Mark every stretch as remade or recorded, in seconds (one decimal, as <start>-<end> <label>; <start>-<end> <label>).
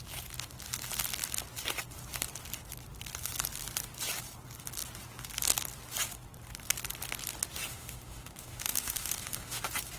0.0-7.7 recorded; 7.7-9.6 remade; 9.6-10.0 recorded